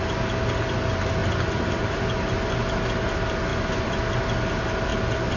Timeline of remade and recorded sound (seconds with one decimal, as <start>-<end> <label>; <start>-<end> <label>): 0.0-1.2 recorded; 1.2-2.0 remade; 2.0-3.5 recorded; 3.5-4.2 remade; 4.2-4.9 recorded; 4.9-5.4 remade